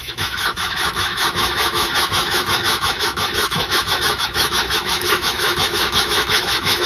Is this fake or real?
fake